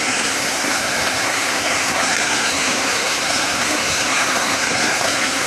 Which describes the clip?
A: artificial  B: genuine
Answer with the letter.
A